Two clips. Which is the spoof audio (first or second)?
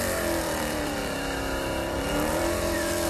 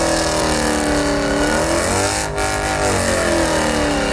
first